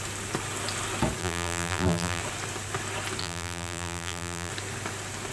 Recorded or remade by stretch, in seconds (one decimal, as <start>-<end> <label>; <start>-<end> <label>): 0.0-1.2 recorded; 1.2-2.2 remade; 2.2-3.2 recorded; 3.2-4.5 remade; 4.5-5.3 recorded